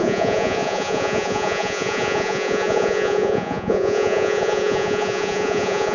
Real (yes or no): no